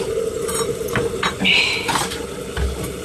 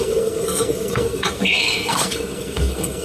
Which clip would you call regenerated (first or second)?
second